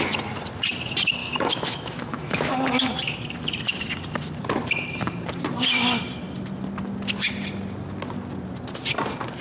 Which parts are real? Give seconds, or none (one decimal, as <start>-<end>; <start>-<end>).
0.0-1.2; 2.9-9.4